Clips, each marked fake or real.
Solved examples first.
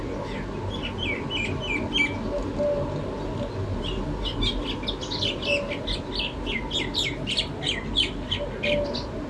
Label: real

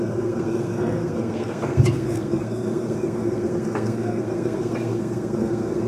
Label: fake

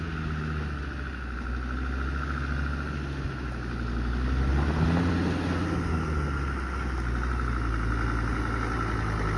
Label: real